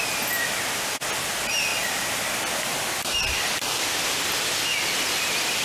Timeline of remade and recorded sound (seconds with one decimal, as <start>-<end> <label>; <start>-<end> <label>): 0.0-5.6 recorded